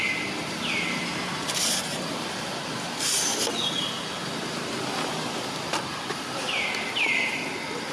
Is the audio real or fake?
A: real